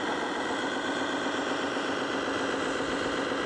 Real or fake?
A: real